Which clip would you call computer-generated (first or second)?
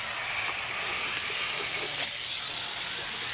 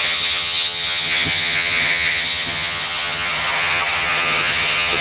second